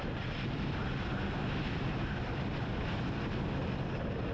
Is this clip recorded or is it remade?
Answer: recorded